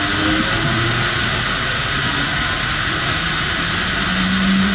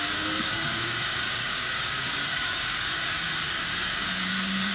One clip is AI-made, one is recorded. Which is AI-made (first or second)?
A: second